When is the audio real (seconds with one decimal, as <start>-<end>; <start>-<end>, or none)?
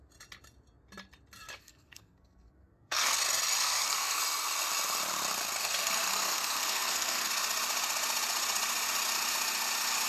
0.0-1.6; 3.2-3.6; 4.2-5.6; 7.3-10.1